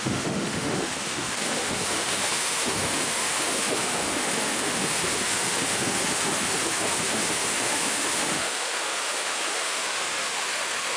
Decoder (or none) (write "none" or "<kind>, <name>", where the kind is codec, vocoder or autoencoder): autoencoder, DAC-VAE